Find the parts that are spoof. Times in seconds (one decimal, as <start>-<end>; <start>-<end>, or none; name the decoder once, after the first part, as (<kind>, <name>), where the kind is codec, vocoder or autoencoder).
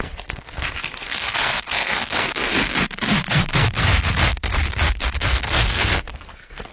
0.0-2.5 (codec, SNAC); 3.3-4.5; 5.0-6.7